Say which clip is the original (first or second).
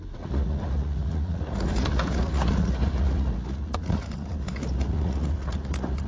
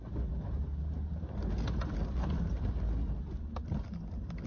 second